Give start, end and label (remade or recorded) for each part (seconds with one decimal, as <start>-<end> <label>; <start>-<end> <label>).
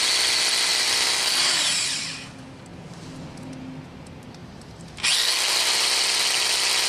0.0-6.9 recorded